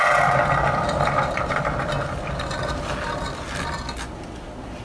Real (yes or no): yes